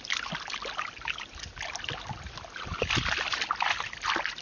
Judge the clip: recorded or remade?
recorded